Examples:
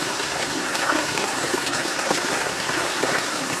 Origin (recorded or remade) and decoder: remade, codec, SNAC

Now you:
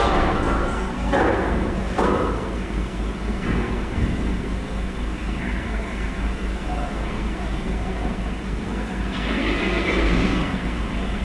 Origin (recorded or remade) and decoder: remade, codec, SNAC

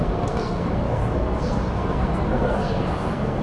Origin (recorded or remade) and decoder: remade, codec, SNAC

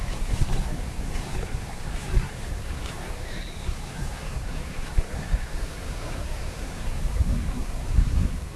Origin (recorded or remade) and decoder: remade, codec, SNAC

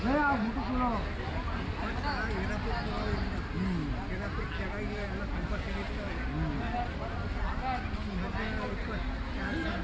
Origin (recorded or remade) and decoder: recorded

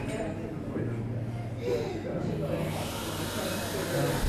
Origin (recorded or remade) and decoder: recorded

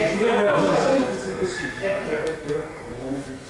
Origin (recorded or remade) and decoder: remade, codec, SNAC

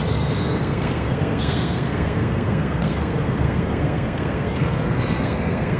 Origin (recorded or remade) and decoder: remade, codec, SNAC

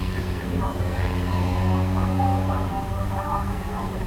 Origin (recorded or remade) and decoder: remade, codec, SNAC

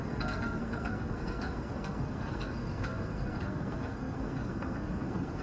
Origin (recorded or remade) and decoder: remade, codec, SNAC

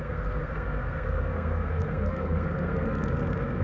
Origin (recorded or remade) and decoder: remade, codec, SNAC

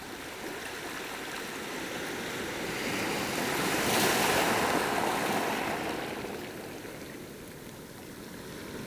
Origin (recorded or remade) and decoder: recorded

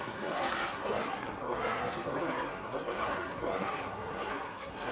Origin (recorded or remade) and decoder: remade, codec, SNAC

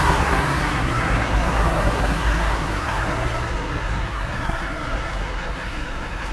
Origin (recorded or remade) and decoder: remade, codec, SNAC